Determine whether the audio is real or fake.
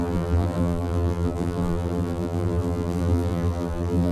fake